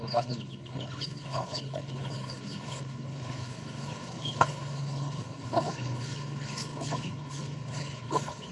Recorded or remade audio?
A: remade